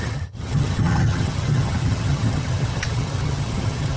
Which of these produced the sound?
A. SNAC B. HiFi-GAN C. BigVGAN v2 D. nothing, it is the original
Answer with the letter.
B